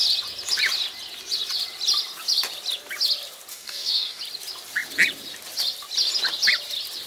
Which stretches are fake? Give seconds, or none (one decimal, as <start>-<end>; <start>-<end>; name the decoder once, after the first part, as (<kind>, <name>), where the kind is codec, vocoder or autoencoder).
3.5-4.2 (codec, DAC)